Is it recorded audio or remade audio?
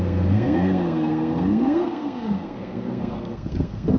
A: remade